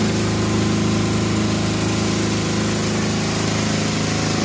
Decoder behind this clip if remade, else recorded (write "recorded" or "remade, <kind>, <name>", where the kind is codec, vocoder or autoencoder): recorded